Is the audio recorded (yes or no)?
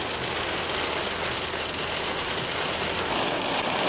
yes